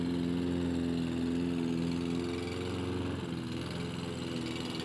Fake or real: real